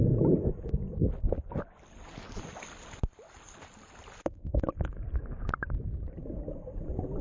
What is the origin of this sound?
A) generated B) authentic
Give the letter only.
B